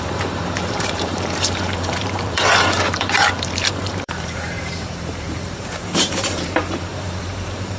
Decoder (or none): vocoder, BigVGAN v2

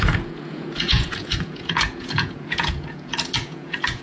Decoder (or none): vocoder, Vocos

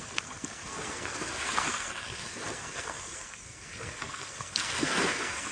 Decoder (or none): codec, SNAC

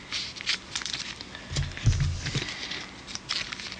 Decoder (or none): none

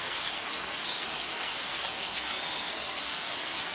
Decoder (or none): codec, SNAC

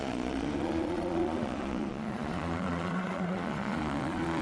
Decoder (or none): vocoder, Vocos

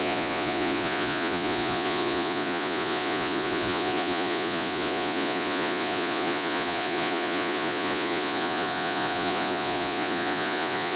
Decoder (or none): vocoder, Vocos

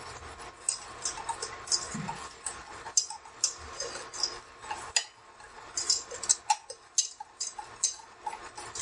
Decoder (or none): none